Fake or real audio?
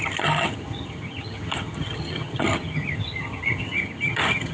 fake